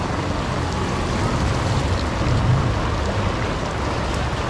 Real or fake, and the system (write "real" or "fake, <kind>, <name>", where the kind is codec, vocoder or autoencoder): real